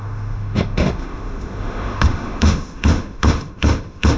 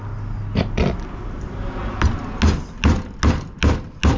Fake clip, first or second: first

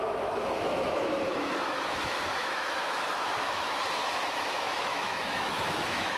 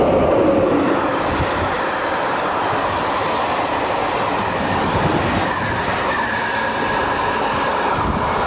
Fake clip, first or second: first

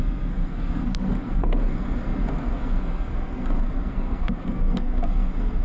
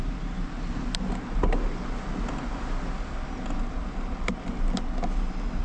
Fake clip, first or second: first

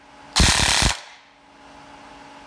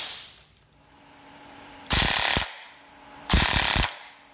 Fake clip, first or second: second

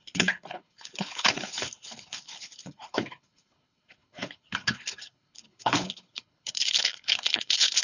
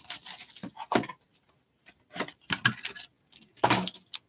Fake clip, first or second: first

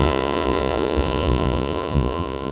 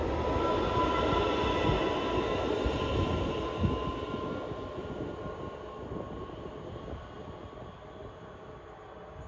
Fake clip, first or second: first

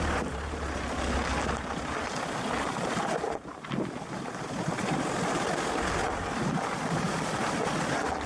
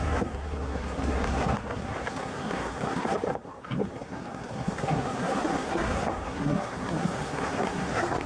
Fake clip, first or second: second